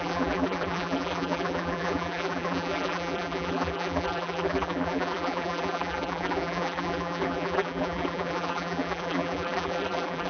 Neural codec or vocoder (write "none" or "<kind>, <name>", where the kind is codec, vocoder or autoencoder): vocoder, BigVGAN v2